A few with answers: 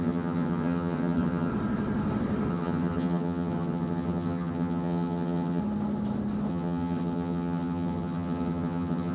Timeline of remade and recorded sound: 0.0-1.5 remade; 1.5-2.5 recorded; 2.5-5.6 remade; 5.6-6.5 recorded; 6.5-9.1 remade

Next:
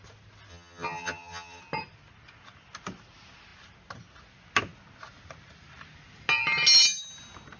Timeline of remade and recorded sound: 0.0-0.5 recorded; 0.5-1.6 remade; 1.6-7.6 recorded

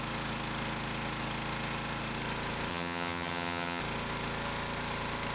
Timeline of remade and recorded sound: 0.0-2.7 recorded; 2.7-3.8 remade; 3.8-5.3 recorded

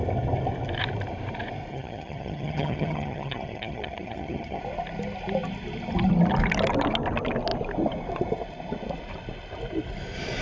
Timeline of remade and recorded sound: 0.0-1.7 recorded; 1.7-4.6 remade; 4.6-10.4 recorded

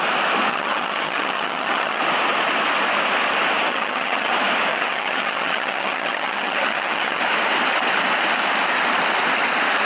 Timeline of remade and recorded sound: 0.0-0.5 recorded; 0.5-2.0 remade; 2.0-3.7 recorded; 3.7-4.3 remade; 4.3-4.7 recorded; 4.7-7.2 remade; 7.2-9.9 recorded

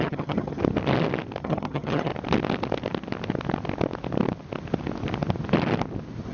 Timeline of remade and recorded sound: 0.0-0.6 remade; 0.6-1.4 recorded; 1.4-2.1 remade; 2.1-6.3 recorded